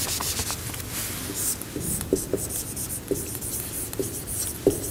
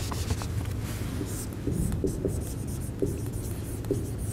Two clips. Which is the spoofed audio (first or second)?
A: first